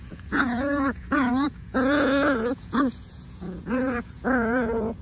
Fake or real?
fake